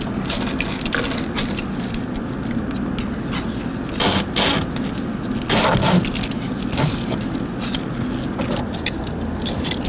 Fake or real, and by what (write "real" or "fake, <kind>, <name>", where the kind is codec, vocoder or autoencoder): real